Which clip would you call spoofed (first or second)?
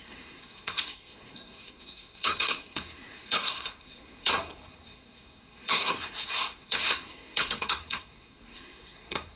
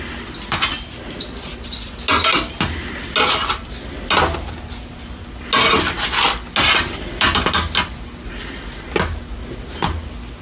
first